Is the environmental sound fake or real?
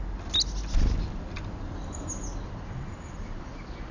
real